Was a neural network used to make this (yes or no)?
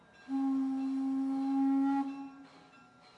no